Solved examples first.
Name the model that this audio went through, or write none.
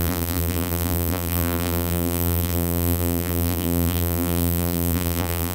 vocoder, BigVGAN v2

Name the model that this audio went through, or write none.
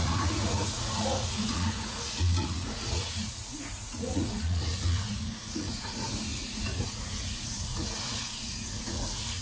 vocoder, Vocos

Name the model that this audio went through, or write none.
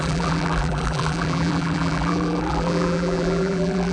vocoder, BigVGAN v2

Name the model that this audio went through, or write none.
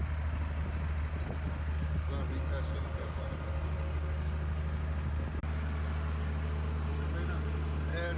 none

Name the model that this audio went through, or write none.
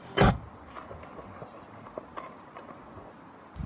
none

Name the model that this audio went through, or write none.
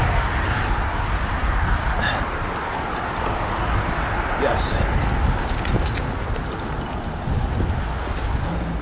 none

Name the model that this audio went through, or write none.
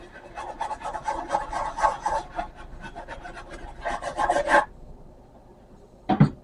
none